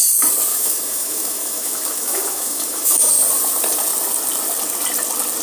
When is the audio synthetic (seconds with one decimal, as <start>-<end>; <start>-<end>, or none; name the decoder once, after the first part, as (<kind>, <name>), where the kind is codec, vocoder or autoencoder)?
0.5-3.1 (autoencoder, DAC-VAE)